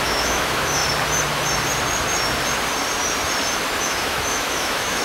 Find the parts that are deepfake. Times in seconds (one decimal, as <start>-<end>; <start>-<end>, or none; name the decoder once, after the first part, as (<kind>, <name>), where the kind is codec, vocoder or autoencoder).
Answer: 0.0-0.8 (autoencoder, DAC-VAE); 3.8-5.0